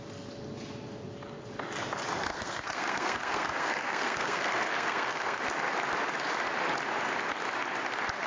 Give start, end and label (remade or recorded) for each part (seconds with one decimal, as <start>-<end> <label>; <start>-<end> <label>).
0.0-2.3 recorded; 2.3-5.4 remade; 5.4-8.3 recorded